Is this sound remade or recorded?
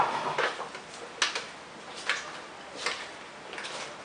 recorded